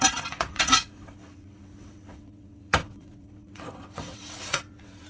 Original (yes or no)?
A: no